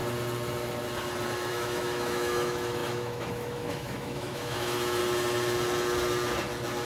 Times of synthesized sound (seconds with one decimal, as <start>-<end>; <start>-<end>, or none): 1.5-5.0